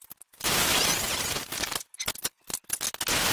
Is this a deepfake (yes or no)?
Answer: no